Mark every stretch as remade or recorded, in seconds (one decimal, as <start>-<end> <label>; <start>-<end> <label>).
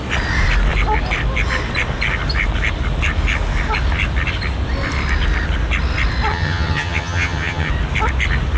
0.0-6.3 recorded; 6.3-7.7 remade; 7.7-8.6 recorded